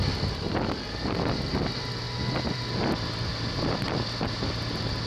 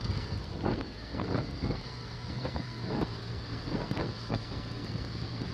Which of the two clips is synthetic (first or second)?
second